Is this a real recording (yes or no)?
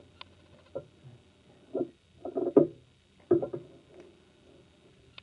yes